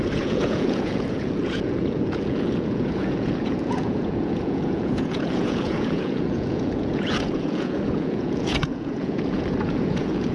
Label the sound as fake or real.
fake